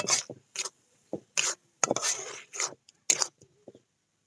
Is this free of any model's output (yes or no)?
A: yes